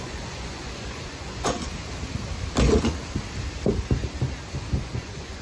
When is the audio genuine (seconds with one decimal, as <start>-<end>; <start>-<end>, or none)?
1.7-4.7